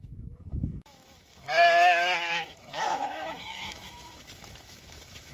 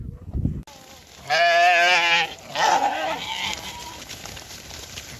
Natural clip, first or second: second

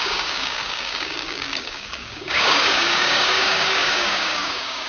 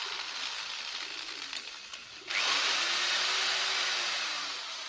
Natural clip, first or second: second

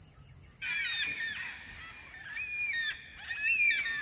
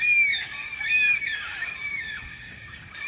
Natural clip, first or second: first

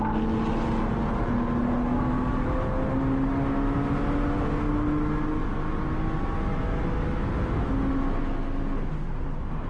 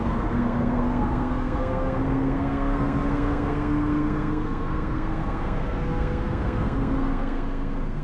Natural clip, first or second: first